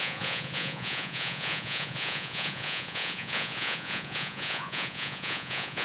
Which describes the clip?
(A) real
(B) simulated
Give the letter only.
B